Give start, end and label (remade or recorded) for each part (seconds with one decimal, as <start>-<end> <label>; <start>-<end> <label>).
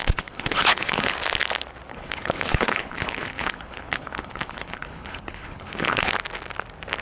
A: 0.0-1.1 remade; 1.1-1.9 recorded; 1.9-6.1 remade; 6.1-7.0 recorded